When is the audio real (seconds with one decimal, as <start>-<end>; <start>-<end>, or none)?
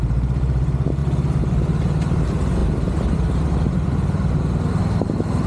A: 1.0-2.2; 2.6-4.8